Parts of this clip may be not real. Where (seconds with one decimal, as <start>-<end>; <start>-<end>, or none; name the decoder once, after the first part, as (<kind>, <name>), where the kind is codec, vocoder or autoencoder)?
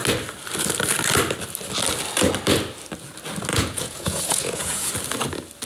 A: 3.5-4.9 (vocoder, Vocos)